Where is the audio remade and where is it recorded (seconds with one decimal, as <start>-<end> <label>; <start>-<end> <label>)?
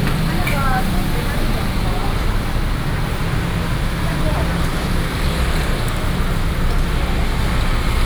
0.0-8.1 recorded